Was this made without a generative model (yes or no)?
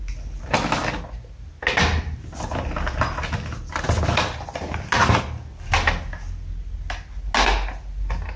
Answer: yes